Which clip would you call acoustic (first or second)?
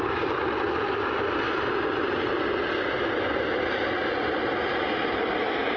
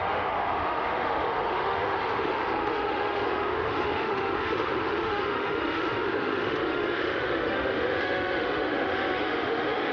first